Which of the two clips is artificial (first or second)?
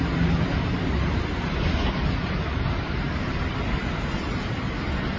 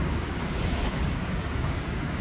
second